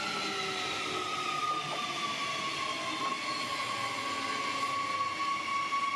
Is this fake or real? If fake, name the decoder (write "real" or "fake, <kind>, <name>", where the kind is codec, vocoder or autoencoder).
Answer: real